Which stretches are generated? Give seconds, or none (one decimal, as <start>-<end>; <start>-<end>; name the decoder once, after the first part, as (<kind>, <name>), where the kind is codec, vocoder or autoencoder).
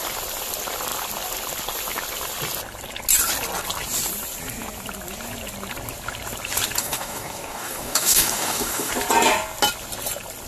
6.8-8.9 (codec, DAC)